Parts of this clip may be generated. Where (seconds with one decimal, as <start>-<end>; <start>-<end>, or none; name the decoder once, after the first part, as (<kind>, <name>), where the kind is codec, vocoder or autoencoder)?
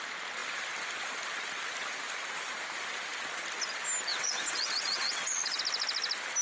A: 4.1-5.6 (vocoder, WaveNeXt)